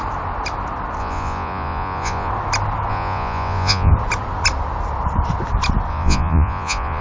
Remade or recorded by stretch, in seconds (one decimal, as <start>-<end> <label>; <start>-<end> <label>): 0.0-1.0 recorded; 1.0-2.3 remade; 2.3-2.9 recorded; 2.9-3.9 remade; 3.9-5.9 recorded; 5.9-7.0 remade